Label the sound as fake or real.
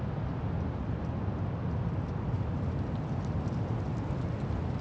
real